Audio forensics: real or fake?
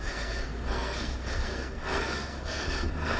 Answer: fake